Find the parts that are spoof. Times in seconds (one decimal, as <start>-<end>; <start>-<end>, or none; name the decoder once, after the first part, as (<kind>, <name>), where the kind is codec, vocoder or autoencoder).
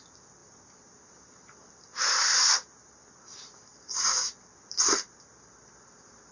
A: none